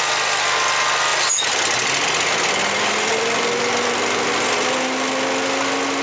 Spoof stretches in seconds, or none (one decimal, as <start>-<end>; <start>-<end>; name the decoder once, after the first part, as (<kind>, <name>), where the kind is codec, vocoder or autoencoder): none